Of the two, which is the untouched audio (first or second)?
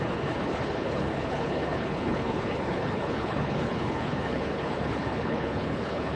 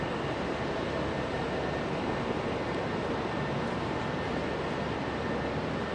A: second